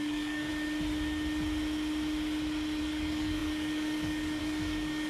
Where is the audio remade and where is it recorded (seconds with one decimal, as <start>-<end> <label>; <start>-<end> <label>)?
0.0-0.5 remade; 0.5-2.8 recorded; 2.8-5.1 remade